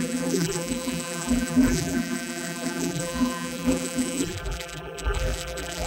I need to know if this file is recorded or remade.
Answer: remade